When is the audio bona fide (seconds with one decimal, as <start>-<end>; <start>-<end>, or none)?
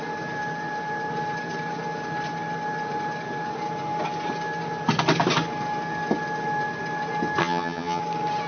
0.0-7.4; 8.0-8.5